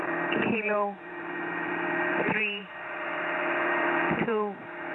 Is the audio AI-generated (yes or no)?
yes